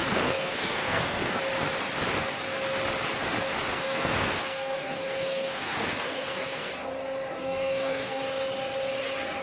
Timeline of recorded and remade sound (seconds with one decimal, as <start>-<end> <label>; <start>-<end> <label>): 0.0-1.4 remade; 1.4-3.7 recorded; 3.7-6.7 remade; 6.7-7.4 recorded; 7.4-8.2 remade; 8.2-9.4 recorded